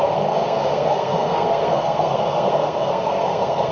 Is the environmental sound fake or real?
fake